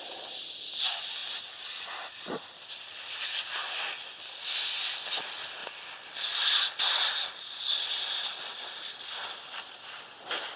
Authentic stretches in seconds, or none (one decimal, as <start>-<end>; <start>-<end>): 0.0-10.6